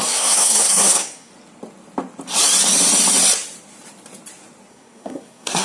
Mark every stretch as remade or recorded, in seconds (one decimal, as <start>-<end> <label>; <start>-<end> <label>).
0.0-1.3 remade; 1.3-4.7 recorded; 4.7-5.6 remade